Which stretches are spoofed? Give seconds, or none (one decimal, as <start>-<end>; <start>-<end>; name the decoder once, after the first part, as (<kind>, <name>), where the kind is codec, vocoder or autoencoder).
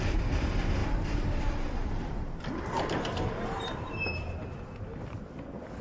0.8-4.3 (vocoder, BigVGAN v2)